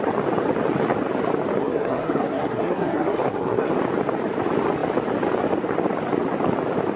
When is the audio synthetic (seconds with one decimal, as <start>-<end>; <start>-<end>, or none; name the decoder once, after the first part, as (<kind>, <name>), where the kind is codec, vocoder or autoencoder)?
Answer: 1.6-3.7 (codec, SNAC)